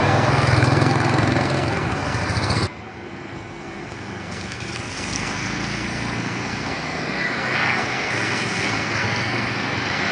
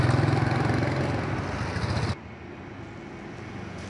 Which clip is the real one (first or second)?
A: second